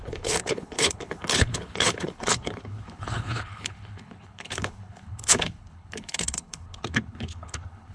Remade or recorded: remade